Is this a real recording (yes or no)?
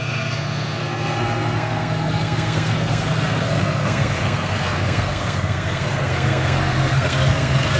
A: no